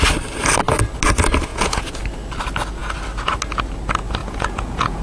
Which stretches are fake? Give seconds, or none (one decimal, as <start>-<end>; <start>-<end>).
1.5-2.0; 4.2-5.0